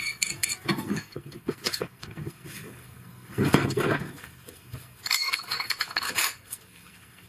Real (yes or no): no